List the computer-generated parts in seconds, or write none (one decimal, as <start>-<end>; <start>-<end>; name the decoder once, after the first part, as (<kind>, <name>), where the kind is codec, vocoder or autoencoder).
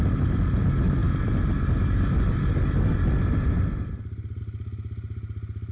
none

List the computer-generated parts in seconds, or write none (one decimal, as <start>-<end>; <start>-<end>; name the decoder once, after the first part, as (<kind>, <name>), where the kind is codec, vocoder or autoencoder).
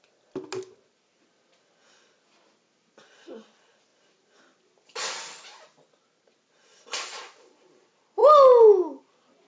none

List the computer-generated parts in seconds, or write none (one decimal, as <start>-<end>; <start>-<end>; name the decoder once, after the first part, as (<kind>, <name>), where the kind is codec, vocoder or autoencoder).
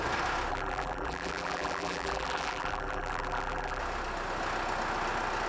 0.5-3.8 (vocoder, BigVGAN v2)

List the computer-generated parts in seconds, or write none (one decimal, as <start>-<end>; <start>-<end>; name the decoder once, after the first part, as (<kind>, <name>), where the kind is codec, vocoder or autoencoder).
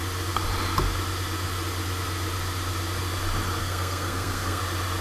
3.6-4.6 (codec, SNAC)